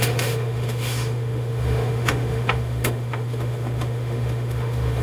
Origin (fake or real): fake